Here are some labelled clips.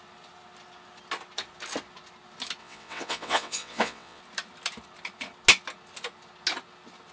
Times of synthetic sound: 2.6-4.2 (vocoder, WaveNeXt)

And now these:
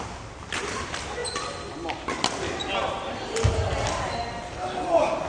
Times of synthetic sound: none

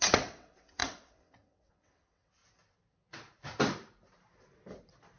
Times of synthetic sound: 0.0-2.4 (vocoder, WaveNeXt)

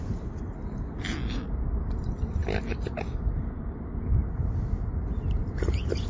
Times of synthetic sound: none

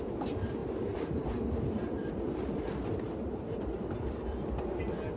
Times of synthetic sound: none

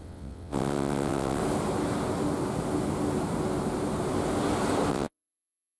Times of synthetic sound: 0.0-1.4 (vocoder, WaveNeXt); 4.9-5.8

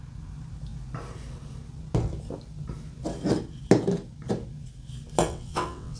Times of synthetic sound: 5.2-6.0 (vocoder, WaveNeXt)